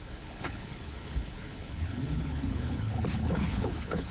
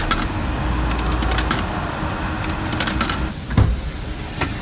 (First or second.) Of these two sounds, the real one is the second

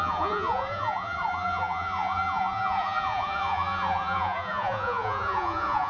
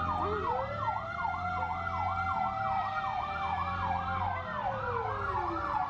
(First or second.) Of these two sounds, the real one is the second